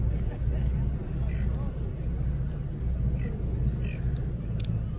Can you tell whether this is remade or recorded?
recorded